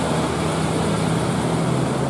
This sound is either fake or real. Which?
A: real